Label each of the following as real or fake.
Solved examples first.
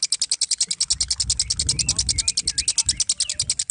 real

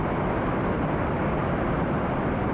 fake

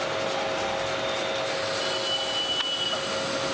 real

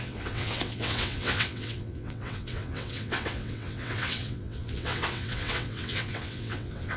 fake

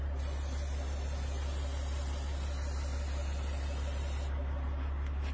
real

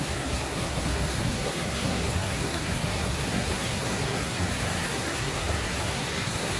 fake